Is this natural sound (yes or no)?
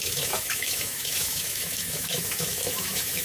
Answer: no